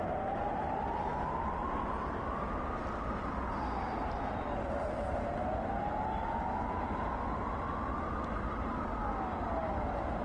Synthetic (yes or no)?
no